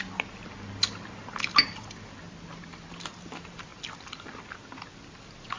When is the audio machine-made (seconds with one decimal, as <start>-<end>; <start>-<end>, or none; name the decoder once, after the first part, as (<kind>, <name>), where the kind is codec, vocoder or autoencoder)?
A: none